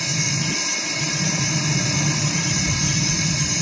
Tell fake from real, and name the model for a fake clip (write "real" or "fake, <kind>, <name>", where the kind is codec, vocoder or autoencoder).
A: real